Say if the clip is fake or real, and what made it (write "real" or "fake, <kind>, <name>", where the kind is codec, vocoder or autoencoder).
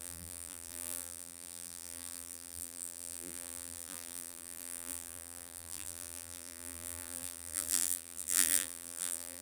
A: fake, vocoder, BigVGAN v2